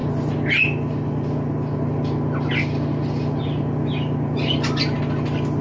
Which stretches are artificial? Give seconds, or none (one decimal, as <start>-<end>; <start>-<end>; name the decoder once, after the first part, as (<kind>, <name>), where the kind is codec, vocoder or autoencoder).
none